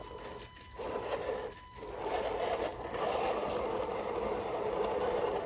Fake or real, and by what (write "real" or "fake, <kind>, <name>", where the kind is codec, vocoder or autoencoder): real